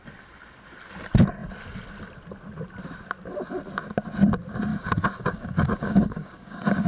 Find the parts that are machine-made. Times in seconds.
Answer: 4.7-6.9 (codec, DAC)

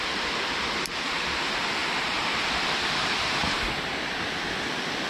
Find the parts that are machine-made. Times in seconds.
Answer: none

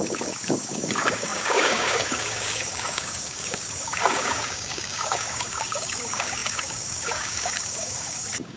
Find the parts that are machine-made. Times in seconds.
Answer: 0.0-8.6 (codec, DAC)

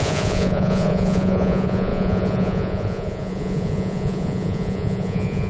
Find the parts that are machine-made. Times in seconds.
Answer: 0.0-5.5 (vocoder, Vocos)

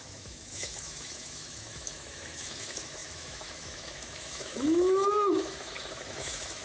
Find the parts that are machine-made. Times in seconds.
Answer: 0.0-6.6 (autoencoder, DAC-VAE)

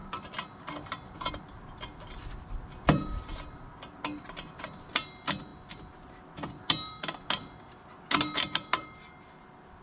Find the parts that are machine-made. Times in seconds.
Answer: none